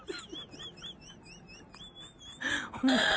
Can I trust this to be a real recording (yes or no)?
yes